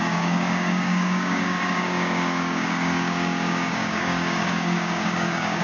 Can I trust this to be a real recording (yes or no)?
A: no